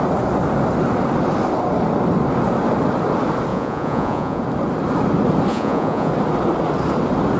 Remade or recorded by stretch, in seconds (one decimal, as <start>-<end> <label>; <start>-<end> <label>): 0.0-3.5 recorded; 3.5-4.4 remade; 4.4-5.5 recorded; 5.5-6.1 remade; 6.1-7.4 recorded